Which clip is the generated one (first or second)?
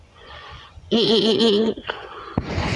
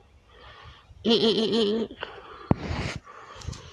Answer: first